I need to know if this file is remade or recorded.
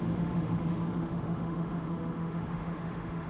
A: remade